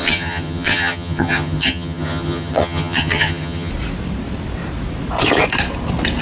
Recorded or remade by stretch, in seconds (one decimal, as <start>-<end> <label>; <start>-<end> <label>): 0.0-3.7 remade; 3.7-6.2 recorded